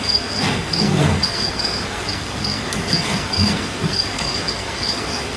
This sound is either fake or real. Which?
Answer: fake